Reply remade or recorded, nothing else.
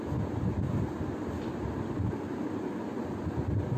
recorded